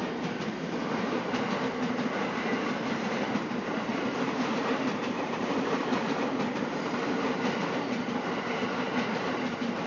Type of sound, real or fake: fake